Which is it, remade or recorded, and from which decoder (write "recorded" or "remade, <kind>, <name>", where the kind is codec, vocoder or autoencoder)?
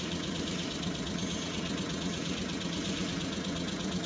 remade, vocoder, Vocos